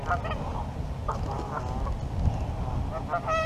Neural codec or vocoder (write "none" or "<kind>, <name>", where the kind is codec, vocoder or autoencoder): none